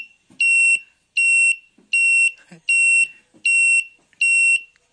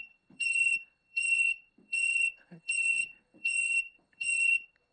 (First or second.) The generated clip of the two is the second